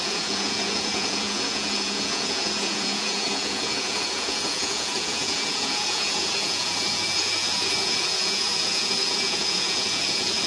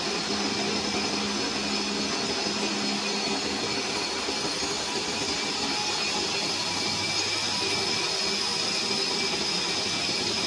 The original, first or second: second